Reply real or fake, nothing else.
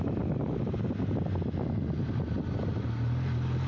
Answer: real